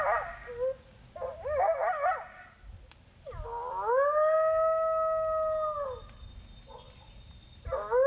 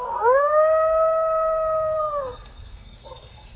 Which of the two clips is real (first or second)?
first